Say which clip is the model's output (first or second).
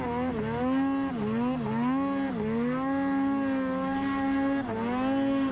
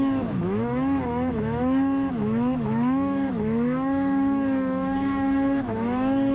second